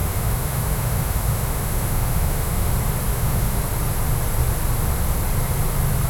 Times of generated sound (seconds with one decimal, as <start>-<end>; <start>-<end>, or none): 0.0-2.7; 3.1-3.6